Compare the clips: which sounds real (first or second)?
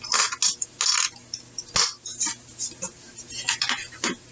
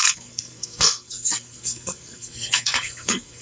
first